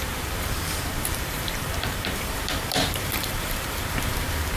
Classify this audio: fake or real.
fake